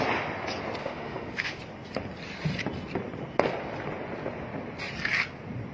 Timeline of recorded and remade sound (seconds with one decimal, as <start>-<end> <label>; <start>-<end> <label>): 0.0-0.8 recorded; 0.8-1.6 remade; 1.6-5.7 recorded